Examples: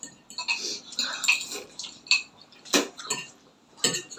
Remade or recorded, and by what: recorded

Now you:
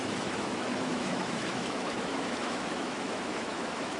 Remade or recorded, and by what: remade, autoencoder, DAC-VAE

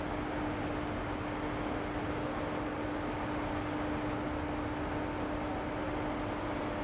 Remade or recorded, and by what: recorded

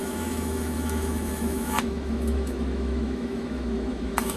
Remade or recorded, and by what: remade, autoencoder, DAC-VAE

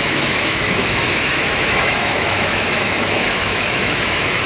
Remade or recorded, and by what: remade, autoencoder, DAC-VAE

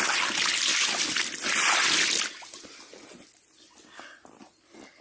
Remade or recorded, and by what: recorded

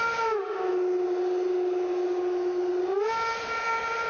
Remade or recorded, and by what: recorded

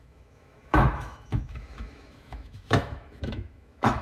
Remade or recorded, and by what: remade, autoencoder, DAC-VAE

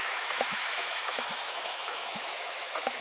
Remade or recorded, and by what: remade, autoencoder, DAC-VAE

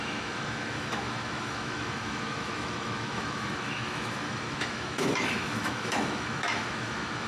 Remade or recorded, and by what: remade, autoencoder, DAC-VAE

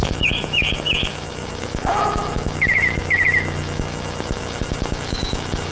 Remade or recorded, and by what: remade, autoencoder, DAC-VAE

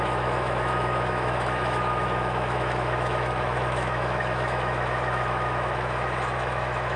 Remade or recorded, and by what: remade, autoencoder, DAC-VAE